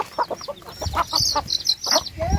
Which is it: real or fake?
real